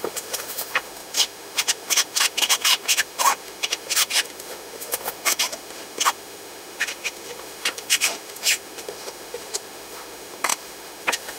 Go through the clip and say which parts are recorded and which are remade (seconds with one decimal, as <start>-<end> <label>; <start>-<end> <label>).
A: 0.0-11.4 remade